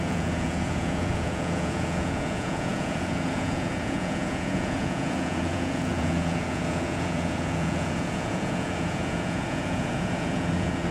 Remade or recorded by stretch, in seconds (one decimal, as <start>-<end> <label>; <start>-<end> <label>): 0.0-10.9 remade